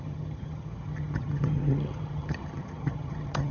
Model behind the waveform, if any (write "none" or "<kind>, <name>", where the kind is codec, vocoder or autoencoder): vocoder, HiFi-GAN